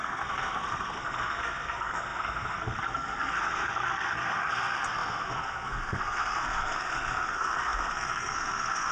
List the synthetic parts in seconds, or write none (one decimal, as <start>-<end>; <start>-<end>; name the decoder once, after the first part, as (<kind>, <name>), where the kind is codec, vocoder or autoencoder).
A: 0.0-8.9 (codec, SNAC)